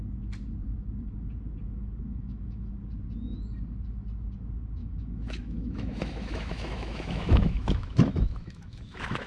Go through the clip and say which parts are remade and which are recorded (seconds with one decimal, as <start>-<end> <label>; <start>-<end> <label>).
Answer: 0.0-2.1 recorded; 2.1-2.7 remade; 2.7-4.8 recorded; 4.8-9.3 remade